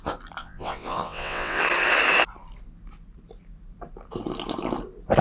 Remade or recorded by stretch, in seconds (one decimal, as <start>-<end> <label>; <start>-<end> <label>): 0.0-0.4 recorded; 0.4-1.6 remade; 1.6-5.2 recorded